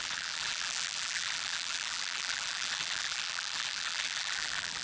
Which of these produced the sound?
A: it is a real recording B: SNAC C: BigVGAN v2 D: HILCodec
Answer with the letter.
C